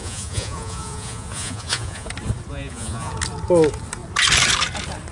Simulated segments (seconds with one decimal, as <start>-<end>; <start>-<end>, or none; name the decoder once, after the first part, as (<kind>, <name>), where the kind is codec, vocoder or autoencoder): 0.0-2.1 (vocoder, Vocos); 2.5-3.1

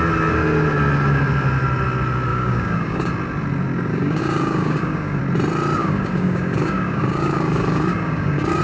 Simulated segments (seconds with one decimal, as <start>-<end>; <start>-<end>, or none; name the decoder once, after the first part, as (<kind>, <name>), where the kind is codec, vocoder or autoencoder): 2.3-3.1 (codec, DAC); 3.9-5.2; 5.8-8.6

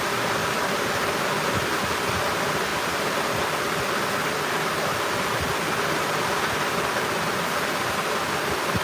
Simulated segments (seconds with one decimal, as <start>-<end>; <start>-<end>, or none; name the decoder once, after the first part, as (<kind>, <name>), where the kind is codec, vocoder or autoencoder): none

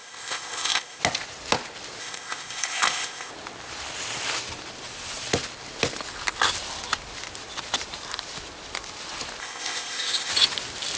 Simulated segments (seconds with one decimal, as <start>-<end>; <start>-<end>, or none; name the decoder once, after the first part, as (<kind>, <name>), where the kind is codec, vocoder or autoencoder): 0.0-1.0 (codec, ZipCodec); 2.0-3.3; 9.4-10.3